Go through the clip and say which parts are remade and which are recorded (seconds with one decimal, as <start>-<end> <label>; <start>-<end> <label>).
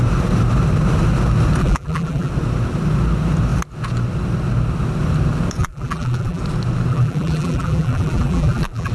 0.0-1.6 recorded; 1.6-2.3 remade; 2.3-5.6 recorded; 5.6-6.4 remade; 6.4-6.9 recorded; 6.9-8.9 remade